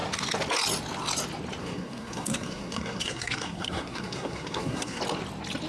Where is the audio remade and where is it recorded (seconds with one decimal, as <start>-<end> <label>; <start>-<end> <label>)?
0.0-1.6 recorded; 1.6-5.0 remade; 5.0-5.7 recorded